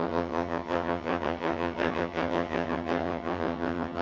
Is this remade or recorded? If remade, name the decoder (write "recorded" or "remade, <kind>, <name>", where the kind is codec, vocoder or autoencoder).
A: remade, vocoder, HiFi-GAN